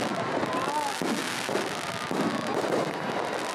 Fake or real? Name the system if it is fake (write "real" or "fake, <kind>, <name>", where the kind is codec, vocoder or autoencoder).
real